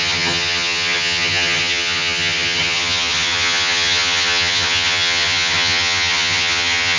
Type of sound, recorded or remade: remade